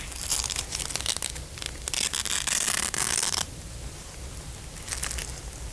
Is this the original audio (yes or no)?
yes